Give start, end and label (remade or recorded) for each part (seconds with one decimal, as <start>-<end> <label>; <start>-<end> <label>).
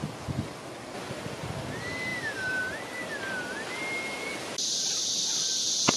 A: 0.0-6.0 recorded